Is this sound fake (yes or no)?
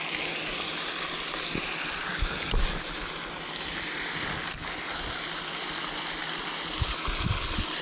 no